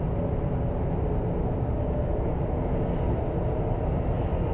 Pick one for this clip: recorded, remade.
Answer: recorded